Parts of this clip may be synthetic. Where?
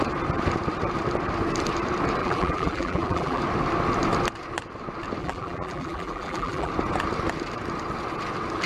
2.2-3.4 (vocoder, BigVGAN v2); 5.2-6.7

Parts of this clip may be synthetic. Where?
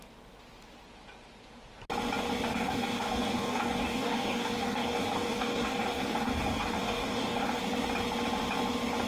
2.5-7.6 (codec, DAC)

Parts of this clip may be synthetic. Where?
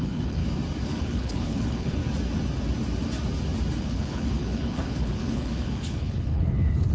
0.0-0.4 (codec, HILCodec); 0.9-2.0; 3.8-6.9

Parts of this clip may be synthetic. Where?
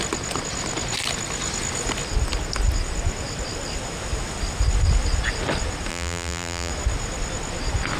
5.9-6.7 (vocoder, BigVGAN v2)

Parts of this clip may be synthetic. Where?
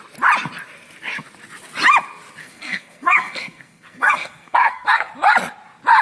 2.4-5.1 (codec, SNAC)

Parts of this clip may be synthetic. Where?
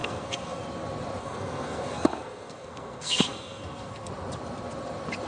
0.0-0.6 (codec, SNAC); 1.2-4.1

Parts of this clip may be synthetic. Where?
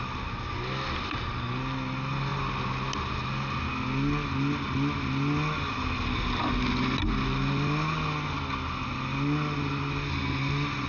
none